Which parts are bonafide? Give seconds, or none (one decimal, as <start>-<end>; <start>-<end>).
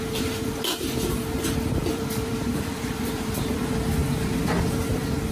0.0-1.8; 3.6-5.3